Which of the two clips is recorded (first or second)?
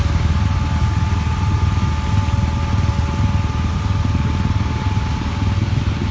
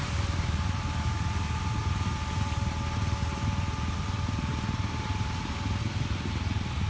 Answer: first